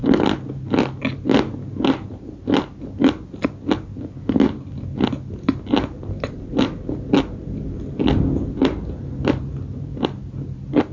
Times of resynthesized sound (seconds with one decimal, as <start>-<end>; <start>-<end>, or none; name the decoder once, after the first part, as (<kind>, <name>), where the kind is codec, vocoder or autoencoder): none